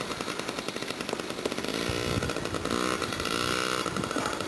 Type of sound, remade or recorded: recorded